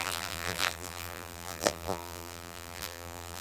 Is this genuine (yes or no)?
no